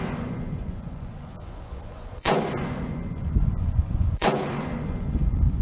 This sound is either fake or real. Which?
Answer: fake